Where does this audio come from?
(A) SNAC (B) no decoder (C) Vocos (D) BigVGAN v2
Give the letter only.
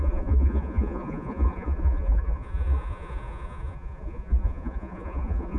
C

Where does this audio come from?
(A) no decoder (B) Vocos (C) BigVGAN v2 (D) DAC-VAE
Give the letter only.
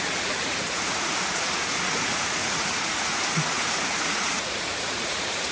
B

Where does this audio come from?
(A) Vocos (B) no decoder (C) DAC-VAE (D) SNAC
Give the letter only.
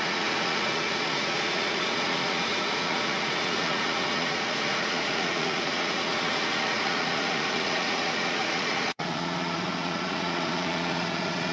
A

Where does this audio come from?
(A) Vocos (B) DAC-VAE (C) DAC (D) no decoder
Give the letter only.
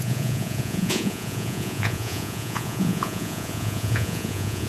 A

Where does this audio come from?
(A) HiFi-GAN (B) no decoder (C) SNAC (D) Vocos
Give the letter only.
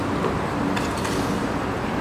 B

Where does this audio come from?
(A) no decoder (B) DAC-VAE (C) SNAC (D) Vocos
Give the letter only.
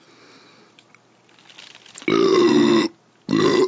A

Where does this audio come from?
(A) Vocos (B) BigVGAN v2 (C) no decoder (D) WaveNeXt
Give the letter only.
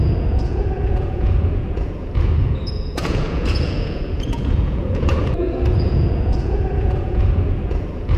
A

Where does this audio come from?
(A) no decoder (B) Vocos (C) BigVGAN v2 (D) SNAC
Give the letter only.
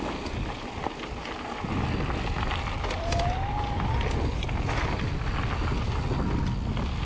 A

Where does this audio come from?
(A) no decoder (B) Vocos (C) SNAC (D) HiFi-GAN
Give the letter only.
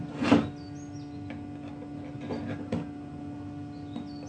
A